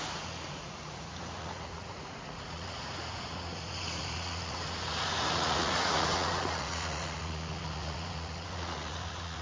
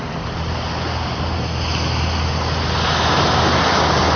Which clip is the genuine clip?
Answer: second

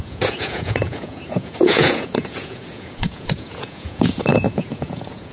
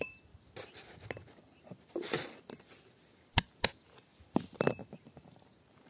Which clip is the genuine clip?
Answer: second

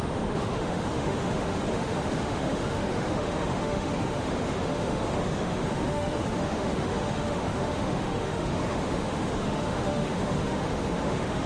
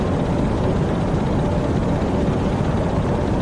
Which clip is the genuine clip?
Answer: second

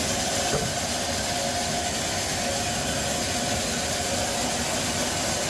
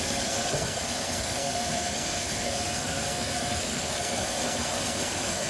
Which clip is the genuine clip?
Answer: first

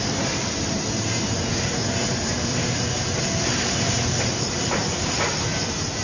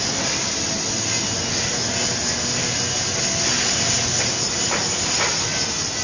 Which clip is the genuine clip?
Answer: second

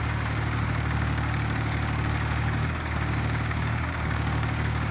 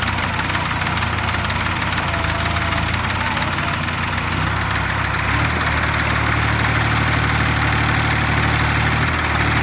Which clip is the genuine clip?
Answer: second